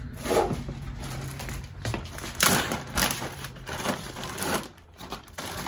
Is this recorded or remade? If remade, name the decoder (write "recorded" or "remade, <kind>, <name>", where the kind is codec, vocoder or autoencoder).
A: remade, vocoder, BigVGAN v2